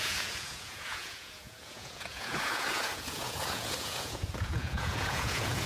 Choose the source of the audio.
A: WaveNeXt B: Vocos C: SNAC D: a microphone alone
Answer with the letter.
B